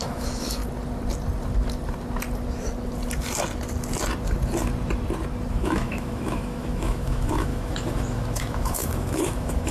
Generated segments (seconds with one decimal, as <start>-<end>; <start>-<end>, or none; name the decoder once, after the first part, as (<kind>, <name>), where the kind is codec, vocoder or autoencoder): 0.0-0.6 (autoencoder, DAC-VAE); 5.5-9.7